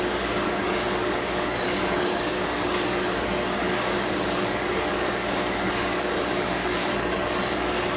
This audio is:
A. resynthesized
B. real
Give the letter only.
A